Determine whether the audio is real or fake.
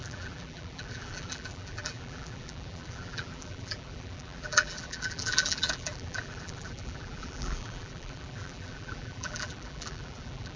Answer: fake